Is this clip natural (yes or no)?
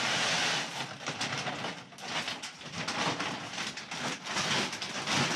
yes